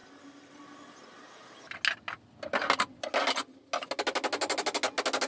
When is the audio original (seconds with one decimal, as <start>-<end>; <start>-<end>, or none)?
0.0-5.3